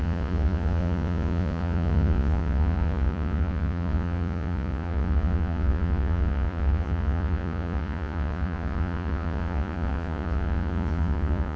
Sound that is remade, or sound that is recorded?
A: remade